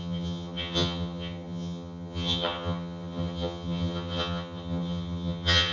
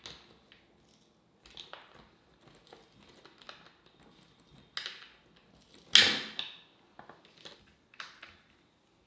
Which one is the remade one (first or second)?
first